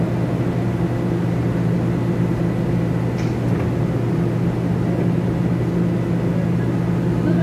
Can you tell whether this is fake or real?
real